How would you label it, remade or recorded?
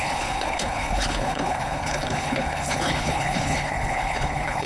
remade